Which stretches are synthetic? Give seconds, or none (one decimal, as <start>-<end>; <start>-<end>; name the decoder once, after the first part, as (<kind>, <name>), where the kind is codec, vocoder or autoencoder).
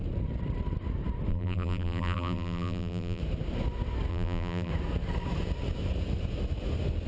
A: 1.3-3.2 (vocoder, BigVGAN v2); 4.1-4.7